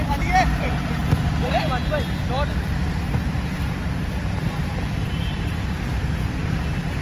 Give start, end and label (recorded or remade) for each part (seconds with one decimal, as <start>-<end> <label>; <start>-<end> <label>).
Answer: 0.0-1.0 remade; 1.0-4.7 recorded; 4.7-7.0 remade

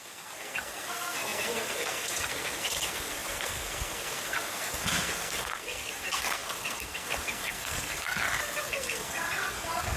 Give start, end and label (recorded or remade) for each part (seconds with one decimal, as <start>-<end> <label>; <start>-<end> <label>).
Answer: 0.0-10.0 remade